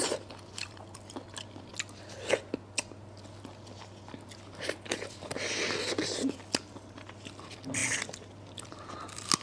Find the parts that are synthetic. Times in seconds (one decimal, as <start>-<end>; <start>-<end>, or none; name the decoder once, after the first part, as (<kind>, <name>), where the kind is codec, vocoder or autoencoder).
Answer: none